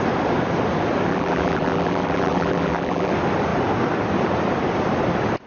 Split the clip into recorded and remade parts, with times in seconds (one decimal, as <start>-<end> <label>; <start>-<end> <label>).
0.0-1.1 recorded; 1.1-3.1 remade; 3.1-5.5 recorded